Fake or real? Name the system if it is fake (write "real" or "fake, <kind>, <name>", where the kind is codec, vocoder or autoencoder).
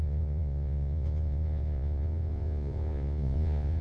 fake, vocoder, Vocos